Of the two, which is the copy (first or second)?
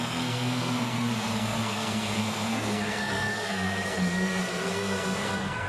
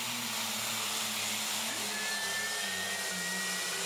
first